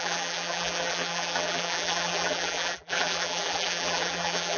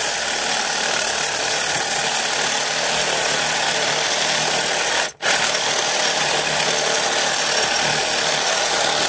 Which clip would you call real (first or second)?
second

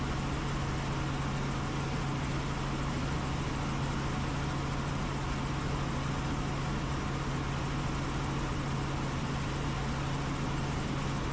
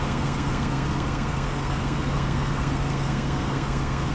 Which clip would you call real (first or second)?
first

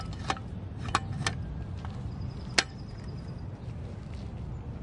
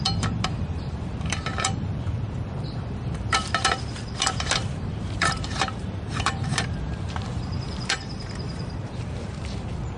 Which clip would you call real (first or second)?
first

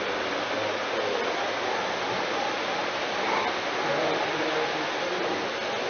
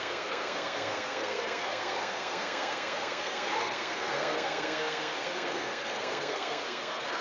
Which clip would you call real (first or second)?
first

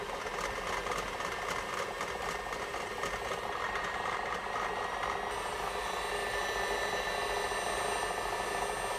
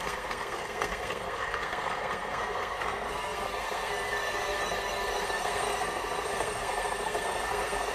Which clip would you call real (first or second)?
first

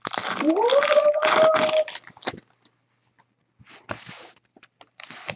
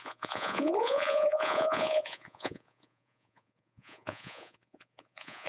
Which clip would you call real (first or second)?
first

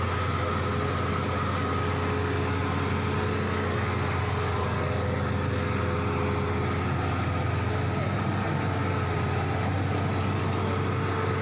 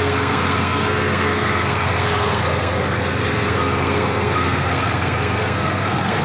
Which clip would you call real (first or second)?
first